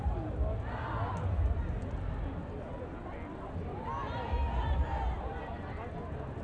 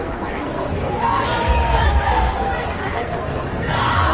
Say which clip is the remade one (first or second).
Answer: second